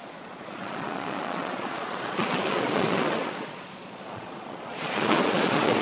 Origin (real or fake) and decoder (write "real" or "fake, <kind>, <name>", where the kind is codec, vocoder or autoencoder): fake, vocoder, Vocos